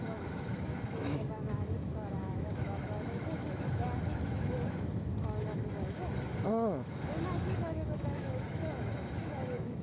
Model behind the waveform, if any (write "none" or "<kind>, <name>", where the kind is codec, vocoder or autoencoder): autoencoder, DAC-VAE